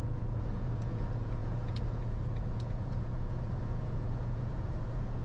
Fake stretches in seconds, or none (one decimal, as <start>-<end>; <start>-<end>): 0.0-5.2